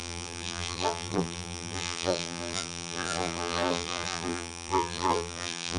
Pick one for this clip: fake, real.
fake